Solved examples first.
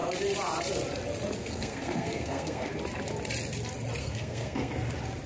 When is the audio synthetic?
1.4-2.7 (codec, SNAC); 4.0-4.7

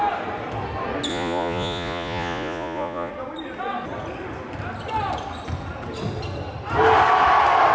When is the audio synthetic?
1.1-3.1 (vocoder, Vocos)

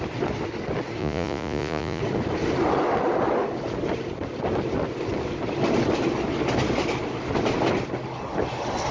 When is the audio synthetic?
1.0-2.0 (vocoder, Vocos)

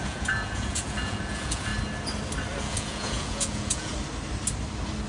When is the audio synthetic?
0.0-1.7 (vocoder, Vocos); 2.6-3.9

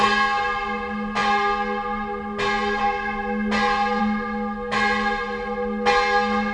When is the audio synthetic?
none

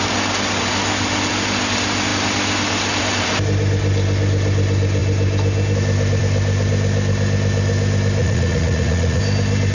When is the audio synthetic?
8.2-9.2 (vocoder, Vocos)

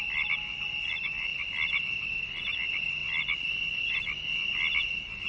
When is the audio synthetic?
none

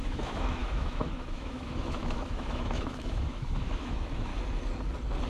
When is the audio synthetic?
0.0-4.3 (autoencoder, DAC-VAE)